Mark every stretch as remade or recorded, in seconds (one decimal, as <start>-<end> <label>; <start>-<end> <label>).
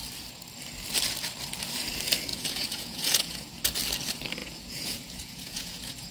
0.0-2.3 recorded; 2.3-3.5 remade; 3.5-4.4 recorded; 4.4-6.1 remade